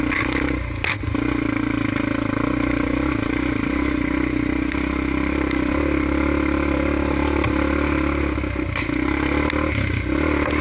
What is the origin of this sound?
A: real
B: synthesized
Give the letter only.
A